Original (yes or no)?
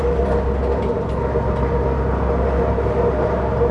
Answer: yes